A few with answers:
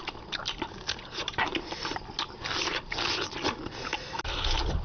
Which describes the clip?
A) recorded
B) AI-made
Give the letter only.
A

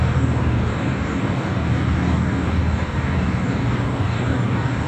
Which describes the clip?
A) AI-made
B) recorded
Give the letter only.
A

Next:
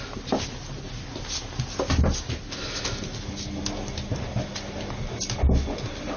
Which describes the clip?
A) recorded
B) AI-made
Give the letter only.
A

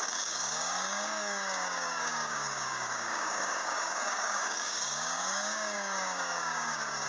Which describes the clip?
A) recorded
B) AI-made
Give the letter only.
B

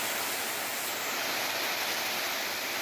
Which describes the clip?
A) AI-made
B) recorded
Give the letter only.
B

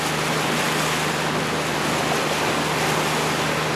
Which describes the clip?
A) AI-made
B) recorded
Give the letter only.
B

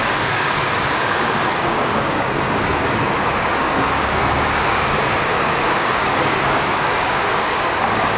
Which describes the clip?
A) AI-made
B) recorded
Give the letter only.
A